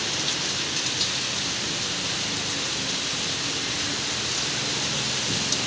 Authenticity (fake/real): real